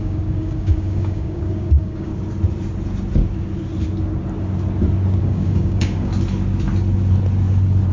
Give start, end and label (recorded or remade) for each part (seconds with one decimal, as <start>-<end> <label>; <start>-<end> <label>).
0.0-2.1 remade; 2.1-5.2 recorded; 5.2-6.1 remade; 6.1-7.9 recorded